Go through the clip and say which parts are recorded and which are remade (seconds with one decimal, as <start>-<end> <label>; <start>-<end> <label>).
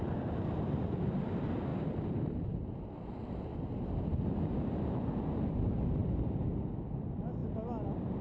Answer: 0.0-8.2 recorded